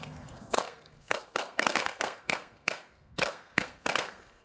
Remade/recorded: remade